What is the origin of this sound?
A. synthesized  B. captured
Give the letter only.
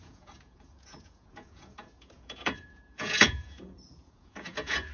A